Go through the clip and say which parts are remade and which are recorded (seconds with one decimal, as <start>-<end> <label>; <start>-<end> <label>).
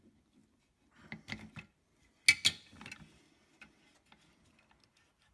0.0-5.3 recorded